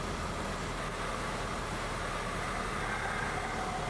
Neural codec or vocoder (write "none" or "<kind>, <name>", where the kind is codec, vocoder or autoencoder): none